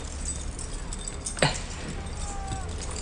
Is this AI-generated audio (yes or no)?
no